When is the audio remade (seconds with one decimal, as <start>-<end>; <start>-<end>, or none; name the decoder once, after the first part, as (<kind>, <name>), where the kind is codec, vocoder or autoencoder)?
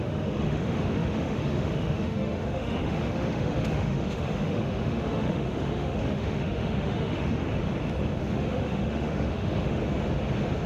0.0-7.4 (autoencoder, DAC-VAE); 8.2-9.8